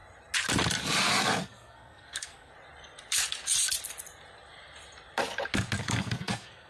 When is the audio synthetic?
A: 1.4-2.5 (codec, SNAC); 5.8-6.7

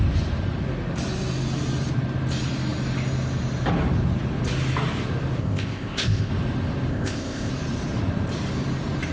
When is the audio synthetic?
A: 5.4-6.3 (codec, ZipCodec); 6.9-7.5

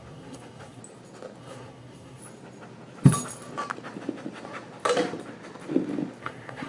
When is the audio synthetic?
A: 0.0-0.8 (codec, SNAC); 1.4-2.2; 6.2-6.7

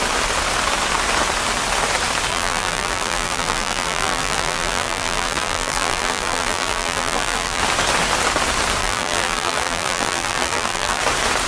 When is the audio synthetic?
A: 2.3-7.6 (vocoder, BigVGAN v2); 8.8-11.0

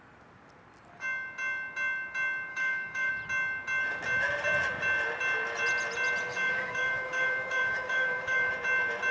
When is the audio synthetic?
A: 2.5-3.1 (autoencoder, DAC-VAE); 6.3-8.5

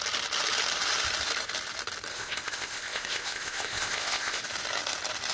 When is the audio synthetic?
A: 2.1-4.4 (codec, ZipCodec)

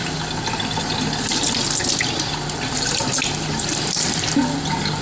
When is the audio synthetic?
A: none